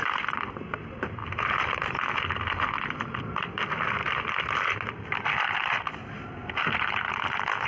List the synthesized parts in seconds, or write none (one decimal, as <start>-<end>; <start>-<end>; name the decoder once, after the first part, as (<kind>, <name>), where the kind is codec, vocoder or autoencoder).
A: none